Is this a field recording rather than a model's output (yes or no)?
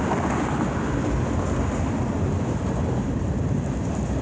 yes